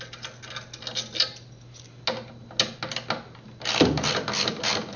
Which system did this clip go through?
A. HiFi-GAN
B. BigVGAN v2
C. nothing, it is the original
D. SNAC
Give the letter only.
C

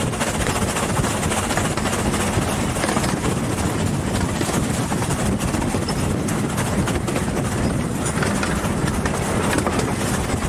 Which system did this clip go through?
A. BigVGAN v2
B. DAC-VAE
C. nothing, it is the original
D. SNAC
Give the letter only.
C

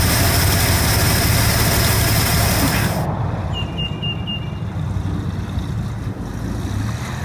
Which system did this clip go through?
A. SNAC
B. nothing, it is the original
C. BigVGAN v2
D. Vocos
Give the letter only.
B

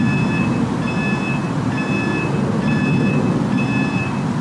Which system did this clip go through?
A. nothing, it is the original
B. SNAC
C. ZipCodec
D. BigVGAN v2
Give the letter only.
A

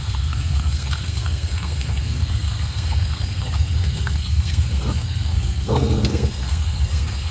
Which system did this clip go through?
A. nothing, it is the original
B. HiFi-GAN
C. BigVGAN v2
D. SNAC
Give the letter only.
D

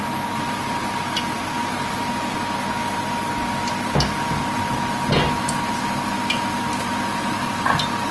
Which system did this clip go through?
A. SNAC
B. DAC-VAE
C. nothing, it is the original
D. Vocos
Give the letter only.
C